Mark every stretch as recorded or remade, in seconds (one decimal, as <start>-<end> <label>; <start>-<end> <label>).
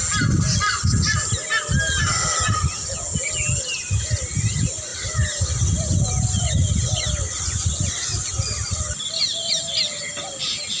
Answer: 0.0-4.9 recorded; 4.9-8.8 remade; 8.8-10.8 recorded